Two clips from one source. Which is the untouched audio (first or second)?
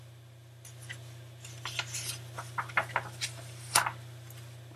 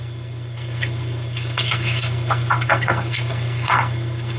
first